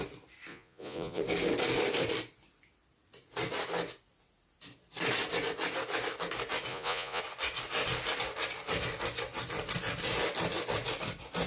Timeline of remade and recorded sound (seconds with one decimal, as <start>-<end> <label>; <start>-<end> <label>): 0.0-0.5 recorded; 0.5-1.2 remade; 1.2-6.7 recorded; 6.7-7.2 remade; 7.2-11.5 recorded